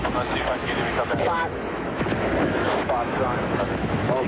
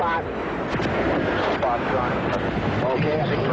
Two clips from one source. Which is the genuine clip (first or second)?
second